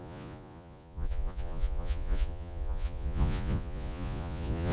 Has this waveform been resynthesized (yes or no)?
yes